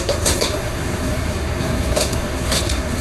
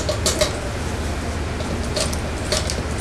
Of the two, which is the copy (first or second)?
first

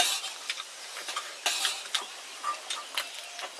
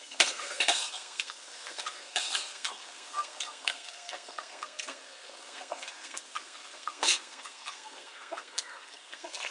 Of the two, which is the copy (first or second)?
second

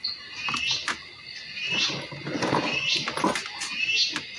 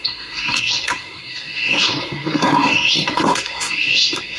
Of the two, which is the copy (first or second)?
second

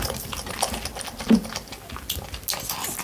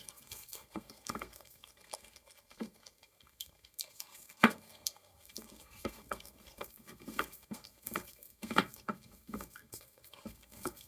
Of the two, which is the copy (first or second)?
second